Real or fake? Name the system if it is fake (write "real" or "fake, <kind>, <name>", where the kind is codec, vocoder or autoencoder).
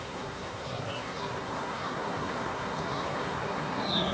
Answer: fake, codec, SNAC